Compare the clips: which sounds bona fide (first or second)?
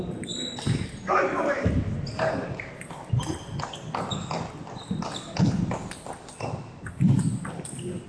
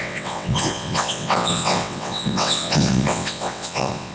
first